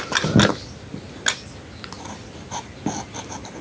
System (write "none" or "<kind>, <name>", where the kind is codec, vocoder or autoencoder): none